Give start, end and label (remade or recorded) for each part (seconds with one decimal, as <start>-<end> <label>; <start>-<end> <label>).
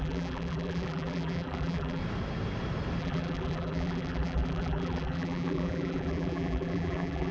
0.0-2.0 remade; 2.0-3.0 recorded; 3.0-7.3 remade